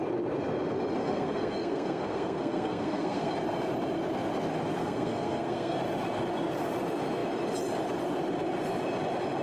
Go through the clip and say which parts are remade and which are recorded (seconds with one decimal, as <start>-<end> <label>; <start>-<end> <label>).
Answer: 0.0-1.0 recorded; 1.0-3.3 remade; 3.3-4.8 recorded; 4.8-5.8 remade; 5.8-9.4 recorded